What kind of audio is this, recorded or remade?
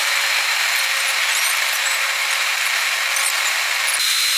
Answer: remade